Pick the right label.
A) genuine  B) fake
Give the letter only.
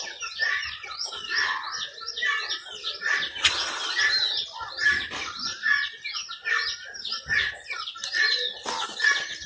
A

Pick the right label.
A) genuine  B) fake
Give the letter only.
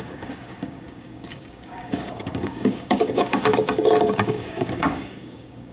B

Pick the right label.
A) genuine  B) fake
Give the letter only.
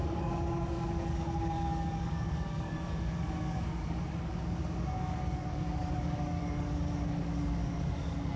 B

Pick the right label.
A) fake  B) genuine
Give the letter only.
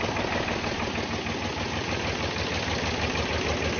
B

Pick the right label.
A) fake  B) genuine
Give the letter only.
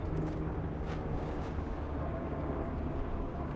A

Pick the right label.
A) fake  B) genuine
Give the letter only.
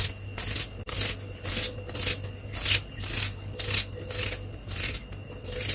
B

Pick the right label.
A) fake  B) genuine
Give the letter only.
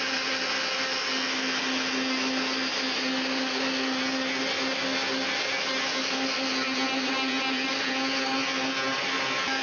B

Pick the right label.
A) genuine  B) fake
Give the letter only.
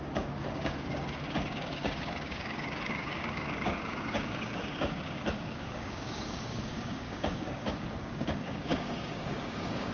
B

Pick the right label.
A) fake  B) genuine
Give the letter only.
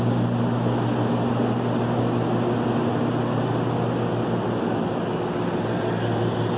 B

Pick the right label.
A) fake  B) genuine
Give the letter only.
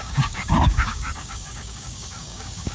A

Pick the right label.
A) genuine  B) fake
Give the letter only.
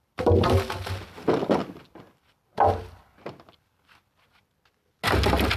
A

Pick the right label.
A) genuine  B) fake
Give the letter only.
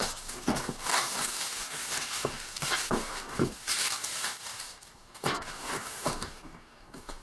B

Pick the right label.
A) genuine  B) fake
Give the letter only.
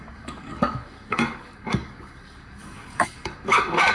B